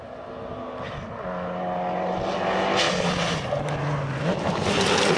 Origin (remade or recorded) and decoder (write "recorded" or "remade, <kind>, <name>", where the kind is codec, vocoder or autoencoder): recorded